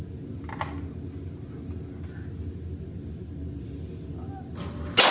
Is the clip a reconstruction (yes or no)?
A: no